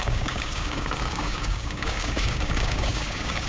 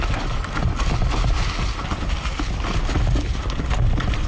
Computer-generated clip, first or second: first